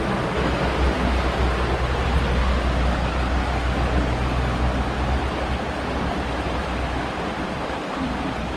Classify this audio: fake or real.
real